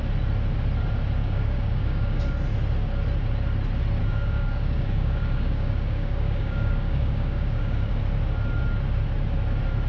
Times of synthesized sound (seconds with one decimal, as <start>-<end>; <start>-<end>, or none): 1.2-2.2; 4.0-7.9